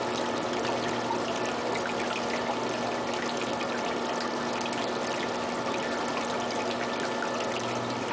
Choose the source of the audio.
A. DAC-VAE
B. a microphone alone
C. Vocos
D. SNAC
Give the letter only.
B